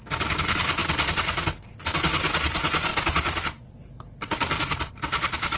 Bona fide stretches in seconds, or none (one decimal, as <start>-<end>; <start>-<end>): 0.0-5.6

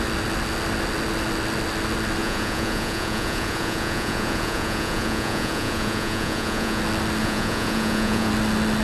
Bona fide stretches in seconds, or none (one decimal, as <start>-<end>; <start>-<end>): 0.0-2.2; 6.8-7.2; 8.3-8.8

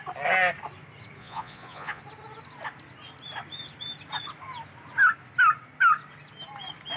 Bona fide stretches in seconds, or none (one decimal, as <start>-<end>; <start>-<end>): 0.0-1.2; 2.0-7.0

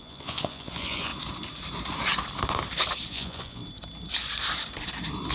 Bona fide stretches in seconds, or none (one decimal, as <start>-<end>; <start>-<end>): 1.1-3.1; 3.6-5.3

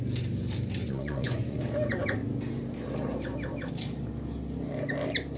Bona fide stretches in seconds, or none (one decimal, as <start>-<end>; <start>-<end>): 0.0-0.8; 1.6-5.4

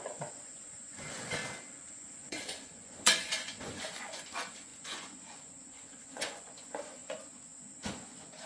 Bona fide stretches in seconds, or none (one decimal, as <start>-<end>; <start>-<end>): 1.4-1.9

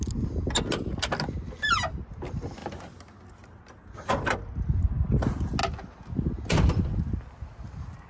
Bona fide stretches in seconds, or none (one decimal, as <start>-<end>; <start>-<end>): 0.0-8.1